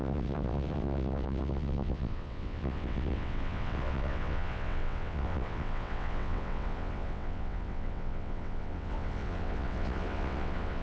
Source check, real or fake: fake